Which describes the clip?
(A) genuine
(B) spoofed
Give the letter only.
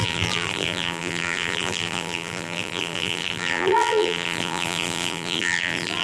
B